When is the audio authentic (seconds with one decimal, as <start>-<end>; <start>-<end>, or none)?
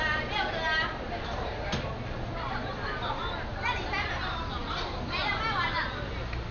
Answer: 0.0-0.9; 1.9-3.5; 5.3-6.5